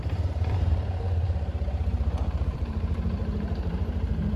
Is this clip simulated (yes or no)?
yes